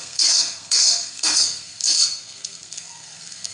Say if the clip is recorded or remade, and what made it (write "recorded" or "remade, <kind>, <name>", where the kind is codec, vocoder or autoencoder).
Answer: remade, codec, SNAC